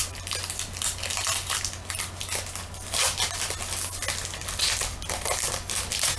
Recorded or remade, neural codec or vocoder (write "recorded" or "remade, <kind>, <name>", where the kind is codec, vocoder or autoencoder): recorded